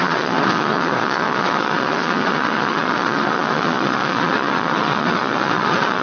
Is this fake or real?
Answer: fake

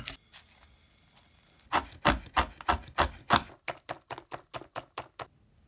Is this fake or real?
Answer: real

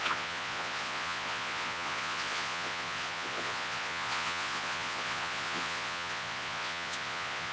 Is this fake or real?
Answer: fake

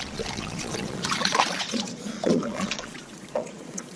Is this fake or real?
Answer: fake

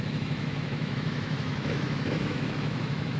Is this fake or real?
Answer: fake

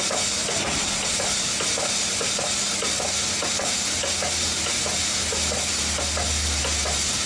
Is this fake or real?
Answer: real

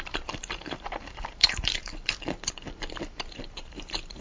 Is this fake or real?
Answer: fake